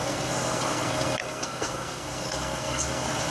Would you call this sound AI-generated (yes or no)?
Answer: yes